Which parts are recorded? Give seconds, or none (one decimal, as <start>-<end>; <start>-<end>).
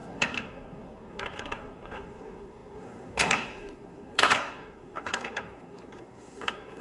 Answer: none